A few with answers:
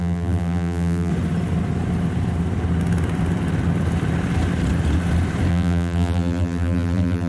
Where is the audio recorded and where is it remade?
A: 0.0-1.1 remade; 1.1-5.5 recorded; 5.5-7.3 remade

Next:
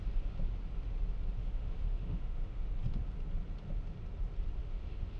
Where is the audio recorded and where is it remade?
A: 0.0-1.4 recorded; 1.4-2.7 remade; 2.7-4.6 recorded; 4.6-5.2 remade

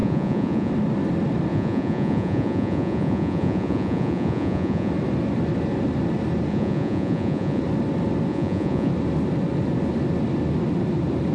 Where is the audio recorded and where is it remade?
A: 0.0-0.7 remade; 0.7-1.5 recorded; 1.5-4.9 remade; 4.9-6.5 recorded; 6.5-7.6 remade; 7.6-8.3 recorded; 8.3-8.9 remade; 8.9-11.3 recorded

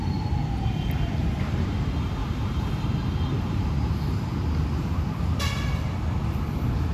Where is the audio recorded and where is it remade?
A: 0.0-1.2 recorded; 1.2-1.7 remade; 1.7-2.2 recorded; 2.2-2.7 remade; 2.7-6.9 recorded